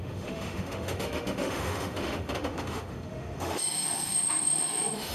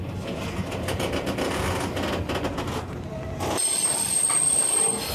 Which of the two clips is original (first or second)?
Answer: second